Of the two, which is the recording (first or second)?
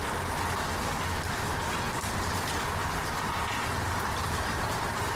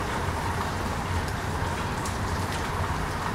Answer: first